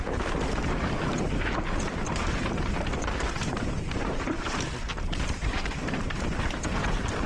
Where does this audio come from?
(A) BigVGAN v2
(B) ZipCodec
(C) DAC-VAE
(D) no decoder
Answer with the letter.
A